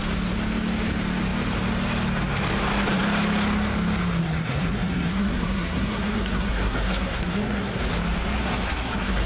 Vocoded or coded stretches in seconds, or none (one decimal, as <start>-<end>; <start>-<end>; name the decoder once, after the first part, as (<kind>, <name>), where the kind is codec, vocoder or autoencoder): 4.2-7.8 (codec, SNAC); 8.4-9.3